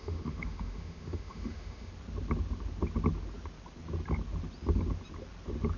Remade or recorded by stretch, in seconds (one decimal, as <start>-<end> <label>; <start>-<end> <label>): 0.0-1.9 remade; 1.9-5.8 recorded